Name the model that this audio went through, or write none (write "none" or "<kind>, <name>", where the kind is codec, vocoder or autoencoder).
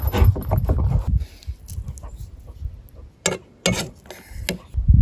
none